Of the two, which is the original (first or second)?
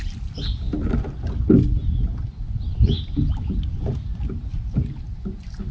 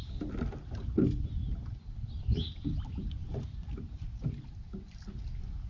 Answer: first